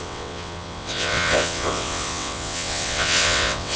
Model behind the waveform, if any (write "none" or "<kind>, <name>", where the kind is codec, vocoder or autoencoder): vocoder, WaveNeXt